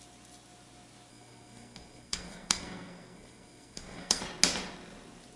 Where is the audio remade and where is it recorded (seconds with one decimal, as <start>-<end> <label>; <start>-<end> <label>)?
0.0-1.1 recorded; 1.1-4.2 remade; 4.2-5.4 recorded